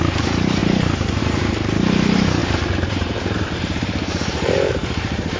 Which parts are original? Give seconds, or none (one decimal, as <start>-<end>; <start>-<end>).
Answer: none